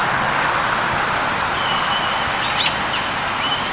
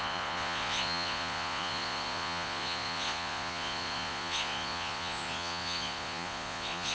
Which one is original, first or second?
first